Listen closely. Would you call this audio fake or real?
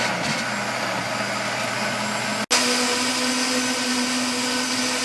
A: real